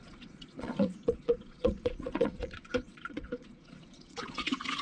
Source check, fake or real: fake